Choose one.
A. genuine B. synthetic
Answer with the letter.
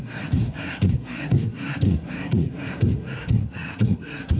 B